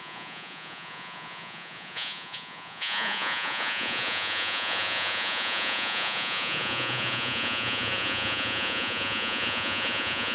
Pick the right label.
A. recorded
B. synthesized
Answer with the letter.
B